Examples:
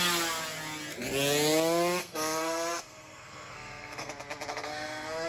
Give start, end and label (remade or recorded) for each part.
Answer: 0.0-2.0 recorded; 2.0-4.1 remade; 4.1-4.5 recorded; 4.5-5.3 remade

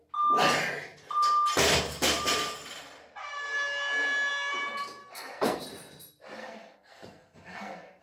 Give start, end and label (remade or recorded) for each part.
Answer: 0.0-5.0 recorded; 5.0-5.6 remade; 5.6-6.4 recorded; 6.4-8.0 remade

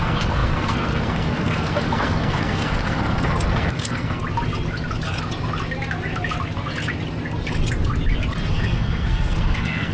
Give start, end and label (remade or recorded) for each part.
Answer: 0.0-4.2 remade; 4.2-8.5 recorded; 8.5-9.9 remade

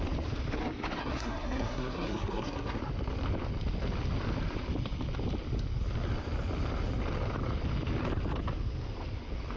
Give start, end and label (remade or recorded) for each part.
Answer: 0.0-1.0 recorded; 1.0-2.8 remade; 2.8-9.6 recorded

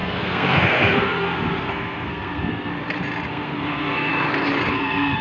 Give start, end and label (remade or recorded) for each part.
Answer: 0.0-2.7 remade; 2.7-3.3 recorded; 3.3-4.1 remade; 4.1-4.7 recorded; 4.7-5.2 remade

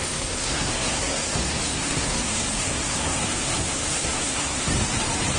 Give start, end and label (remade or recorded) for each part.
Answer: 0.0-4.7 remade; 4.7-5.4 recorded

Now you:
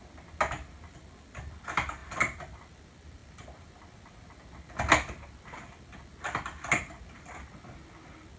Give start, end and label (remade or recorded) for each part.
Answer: 0.0-8.4 recorded